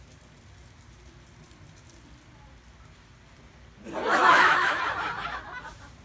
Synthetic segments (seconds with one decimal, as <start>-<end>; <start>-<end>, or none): 4.1-4.8